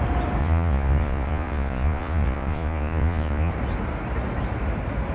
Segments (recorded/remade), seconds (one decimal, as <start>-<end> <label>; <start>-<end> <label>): 0.0-0.4 recorded; 0.4-3.5 remade; 3.5-5.1 recorded